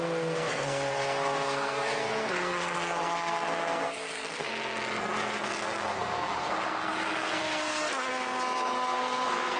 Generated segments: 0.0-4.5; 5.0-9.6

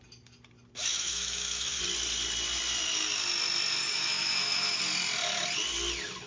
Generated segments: 0.8-1.8; 3.8-4.8